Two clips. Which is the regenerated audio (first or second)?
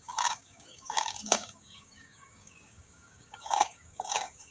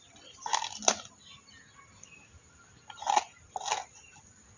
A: first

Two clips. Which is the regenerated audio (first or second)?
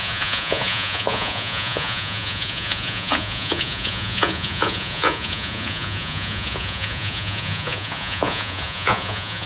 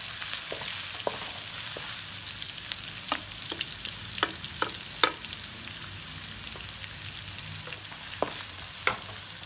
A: first